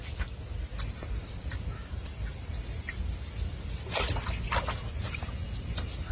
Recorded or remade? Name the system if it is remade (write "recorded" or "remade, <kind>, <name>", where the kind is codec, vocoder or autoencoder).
recorded